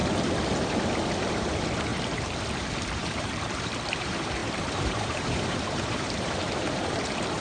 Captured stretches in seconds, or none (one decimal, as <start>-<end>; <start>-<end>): 0.0-1.3